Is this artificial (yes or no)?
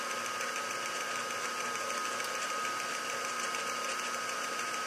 yes